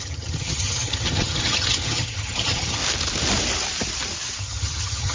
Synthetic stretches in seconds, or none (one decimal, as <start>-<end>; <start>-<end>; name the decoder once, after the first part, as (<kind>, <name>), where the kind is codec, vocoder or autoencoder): 0.0-2.8 (vocoder, HiFi-GAN); 4.4-5.1